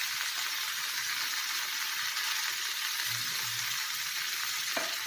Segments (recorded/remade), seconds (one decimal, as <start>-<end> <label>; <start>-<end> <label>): 0.0-5.1 recorded